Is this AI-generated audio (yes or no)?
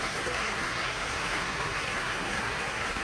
yes